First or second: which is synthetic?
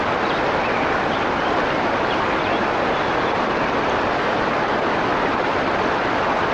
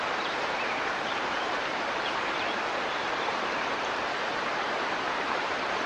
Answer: second